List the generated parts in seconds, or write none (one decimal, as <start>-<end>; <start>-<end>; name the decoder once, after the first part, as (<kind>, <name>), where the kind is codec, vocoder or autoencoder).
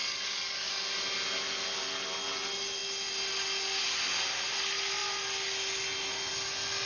0.0-0.7 (codec, DAC)